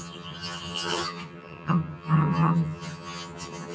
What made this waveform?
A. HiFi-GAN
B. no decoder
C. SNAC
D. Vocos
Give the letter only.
A